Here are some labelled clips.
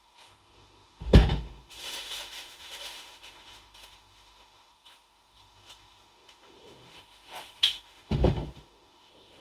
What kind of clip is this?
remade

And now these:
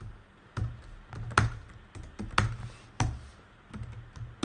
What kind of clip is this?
recorded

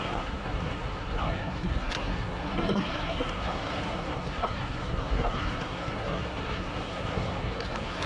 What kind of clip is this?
remade